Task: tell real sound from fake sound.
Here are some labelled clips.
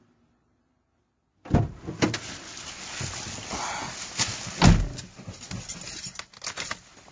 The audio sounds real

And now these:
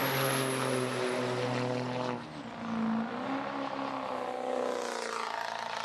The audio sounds real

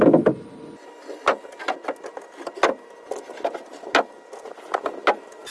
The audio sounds real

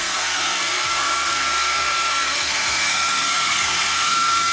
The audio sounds fake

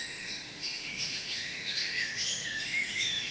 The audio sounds fake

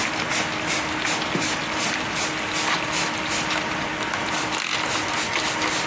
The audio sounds real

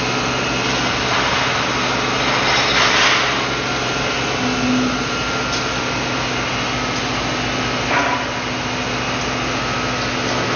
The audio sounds real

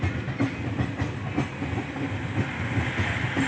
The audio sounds real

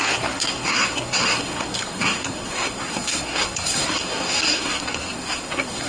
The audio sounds fake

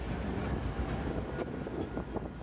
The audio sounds real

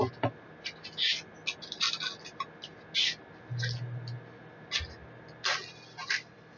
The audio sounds real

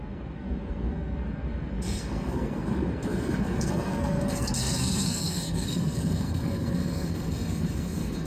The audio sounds fake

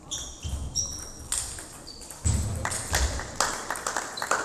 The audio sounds real